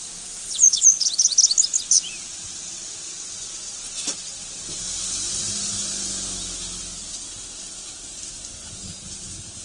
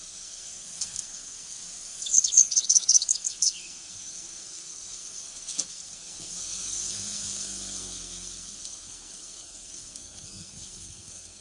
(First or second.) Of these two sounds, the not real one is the second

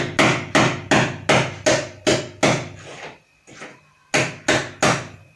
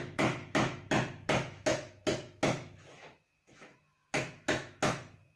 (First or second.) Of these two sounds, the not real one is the second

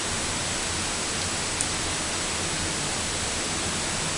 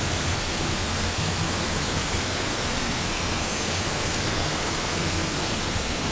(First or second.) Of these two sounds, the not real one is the second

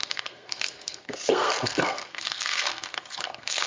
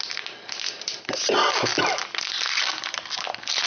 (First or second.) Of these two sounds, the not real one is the first